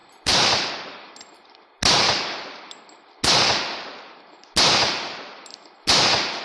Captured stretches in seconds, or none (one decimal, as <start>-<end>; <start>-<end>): 0.7-6.4